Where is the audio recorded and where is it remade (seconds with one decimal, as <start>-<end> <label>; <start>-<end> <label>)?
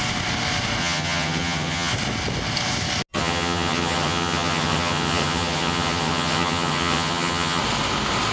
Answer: 0.0-0.8 recorded; 0.8-1.9 remade; 1.9-3.1 recorded; 3.1-7.6 remade; 7.6-8.3 recorded